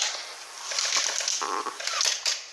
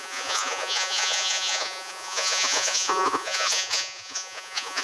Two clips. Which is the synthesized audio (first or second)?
second